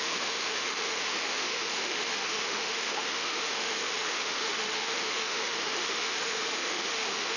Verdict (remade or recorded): remade